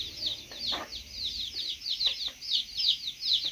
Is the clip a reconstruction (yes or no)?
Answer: no